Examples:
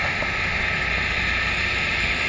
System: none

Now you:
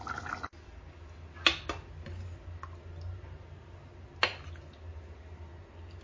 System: none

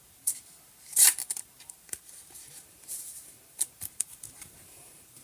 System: vocoder, BigVGAN v2